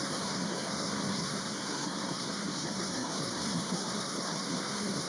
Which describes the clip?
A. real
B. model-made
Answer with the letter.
B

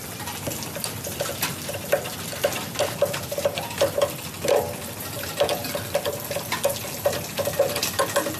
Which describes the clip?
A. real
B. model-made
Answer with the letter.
A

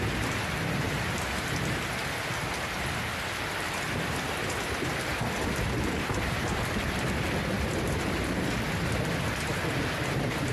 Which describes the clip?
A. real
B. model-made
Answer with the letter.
A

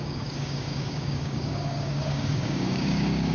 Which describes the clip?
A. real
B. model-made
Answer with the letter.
B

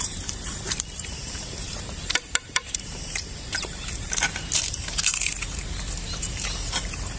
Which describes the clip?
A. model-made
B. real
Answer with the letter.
A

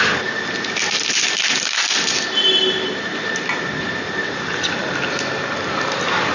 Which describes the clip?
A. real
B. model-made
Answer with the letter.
A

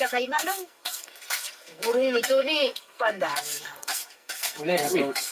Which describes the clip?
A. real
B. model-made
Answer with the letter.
B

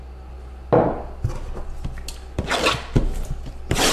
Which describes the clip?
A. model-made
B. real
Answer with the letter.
B